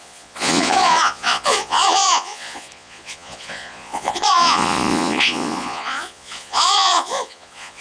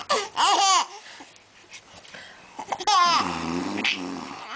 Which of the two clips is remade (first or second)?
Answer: first